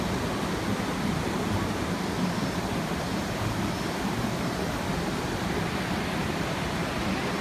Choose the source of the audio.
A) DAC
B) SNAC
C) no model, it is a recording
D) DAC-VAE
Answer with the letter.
C